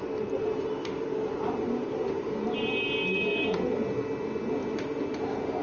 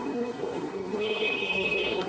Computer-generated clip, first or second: second